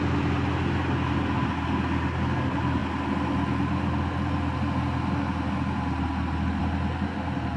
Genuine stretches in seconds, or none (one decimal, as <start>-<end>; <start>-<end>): 0.0-7.6